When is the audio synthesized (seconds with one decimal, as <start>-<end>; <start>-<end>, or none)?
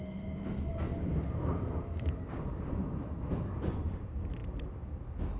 0.7-3.1